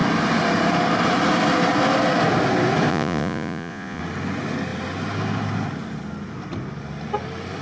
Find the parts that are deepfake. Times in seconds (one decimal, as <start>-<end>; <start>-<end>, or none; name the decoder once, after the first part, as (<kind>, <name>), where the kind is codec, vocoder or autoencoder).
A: 2.9-4.0 (vocoder, Vocos)